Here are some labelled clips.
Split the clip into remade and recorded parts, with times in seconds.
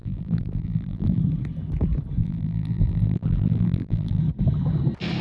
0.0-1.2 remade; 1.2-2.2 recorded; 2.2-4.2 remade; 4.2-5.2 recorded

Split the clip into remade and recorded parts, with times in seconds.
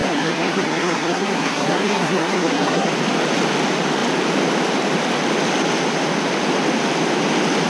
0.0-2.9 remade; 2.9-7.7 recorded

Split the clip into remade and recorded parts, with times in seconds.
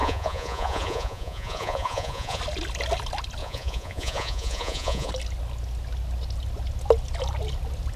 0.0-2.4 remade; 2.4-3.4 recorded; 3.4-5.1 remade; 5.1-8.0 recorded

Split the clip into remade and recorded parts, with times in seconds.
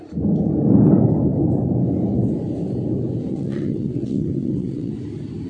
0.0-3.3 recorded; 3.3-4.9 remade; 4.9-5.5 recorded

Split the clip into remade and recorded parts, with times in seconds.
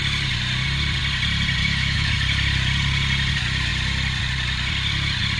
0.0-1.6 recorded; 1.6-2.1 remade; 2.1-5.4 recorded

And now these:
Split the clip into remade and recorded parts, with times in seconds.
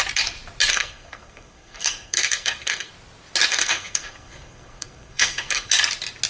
0.0-0.7 recorded; 0.7-2.9 remade; 2.9-3.5 recorded; 3.5-5.7 remade; 5.7-6.3 recorded